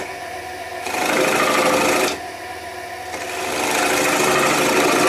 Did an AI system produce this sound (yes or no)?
no